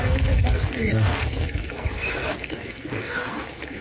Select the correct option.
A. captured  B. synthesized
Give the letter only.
B